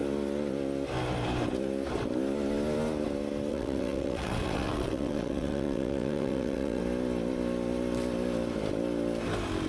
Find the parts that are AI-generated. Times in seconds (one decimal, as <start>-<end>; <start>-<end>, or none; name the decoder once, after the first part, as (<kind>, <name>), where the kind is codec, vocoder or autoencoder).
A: 3.5-6.8 (vocoder, WaveNeXt)